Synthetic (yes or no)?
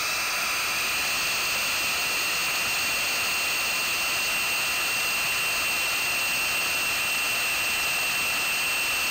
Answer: no